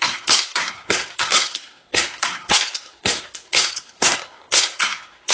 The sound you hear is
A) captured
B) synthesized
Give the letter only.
B